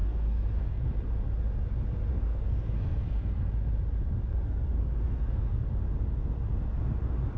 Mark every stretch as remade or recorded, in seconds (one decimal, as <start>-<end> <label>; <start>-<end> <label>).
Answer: 0.0-0.8 remade; 0.8-2.1 recorded; 2.1-3.5 remade; 3.5-4.3 recorded; 4.3-5.7 remade; 5.7-7.4 recorded

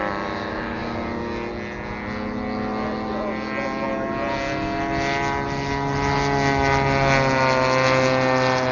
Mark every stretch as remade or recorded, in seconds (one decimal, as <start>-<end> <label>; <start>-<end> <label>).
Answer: 0.0-8.7 recorded